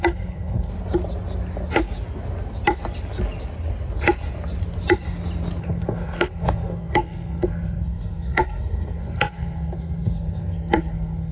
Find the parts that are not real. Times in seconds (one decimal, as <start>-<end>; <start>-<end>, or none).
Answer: 0.0-0.7; 5.6-11.3